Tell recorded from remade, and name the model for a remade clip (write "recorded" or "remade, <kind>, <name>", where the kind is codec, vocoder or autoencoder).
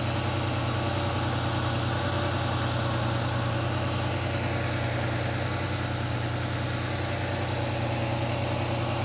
recorded